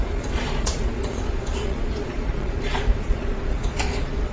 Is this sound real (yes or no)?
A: no